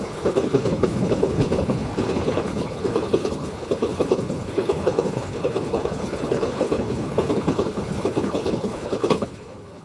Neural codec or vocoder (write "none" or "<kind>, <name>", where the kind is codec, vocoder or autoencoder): codec, HILCodec